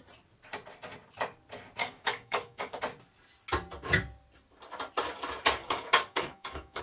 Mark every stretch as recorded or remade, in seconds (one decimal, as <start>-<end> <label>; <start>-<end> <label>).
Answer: 0.0-1.8 recorded; 1.8-2.8 remade; 2.8-5.6 recorded; 5.6-6.8 remade